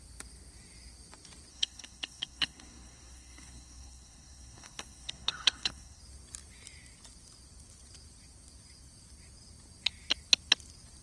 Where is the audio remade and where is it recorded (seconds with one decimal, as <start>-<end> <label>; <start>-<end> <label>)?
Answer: 0.0-1.5 recorded; 1.5-6.0 remade; 6.0-11.0 recorded